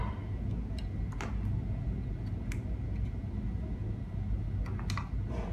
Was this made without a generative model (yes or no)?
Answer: yes